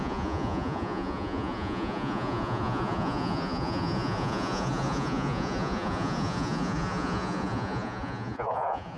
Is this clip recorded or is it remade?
remade